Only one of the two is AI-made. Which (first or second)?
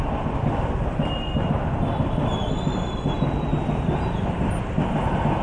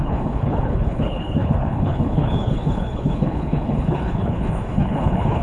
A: second